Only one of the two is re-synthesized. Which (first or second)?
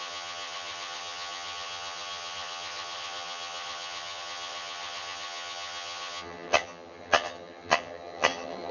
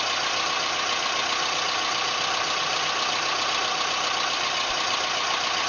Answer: first